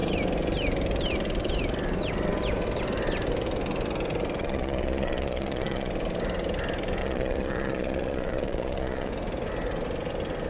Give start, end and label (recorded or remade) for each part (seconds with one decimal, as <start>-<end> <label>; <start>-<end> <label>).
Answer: 0.0-4.4 recorded; 4.4-5.9 remade; 5.9-7.0 recorded; 7.0-9.1 remade; 9.1-10.5 recorded